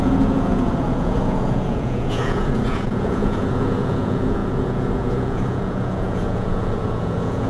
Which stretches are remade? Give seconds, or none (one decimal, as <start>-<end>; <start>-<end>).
0.0-7.5